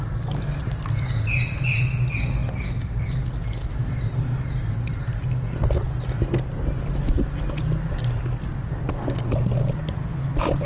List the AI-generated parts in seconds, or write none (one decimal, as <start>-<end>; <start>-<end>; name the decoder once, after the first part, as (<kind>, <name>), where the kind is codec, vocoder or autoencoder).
none